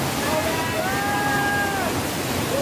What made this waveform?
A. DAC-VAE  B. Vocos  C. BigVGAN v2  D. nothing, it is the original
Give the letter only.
D